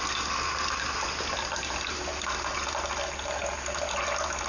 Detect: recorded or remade recorded